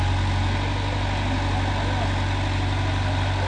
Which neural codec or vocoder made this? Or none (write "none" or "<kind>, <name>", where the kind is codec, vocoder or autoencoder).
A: none